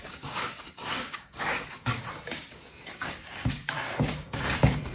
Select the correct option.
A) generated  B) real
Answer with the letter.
A